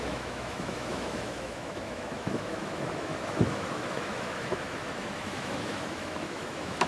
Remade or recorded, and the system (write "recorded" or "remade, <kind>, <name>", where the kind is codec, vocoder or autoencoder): remade, autoencoder, DAC-VAE